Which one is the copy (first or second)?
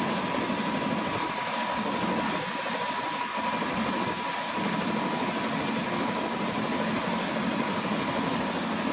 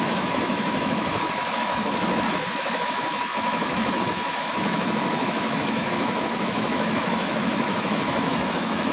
second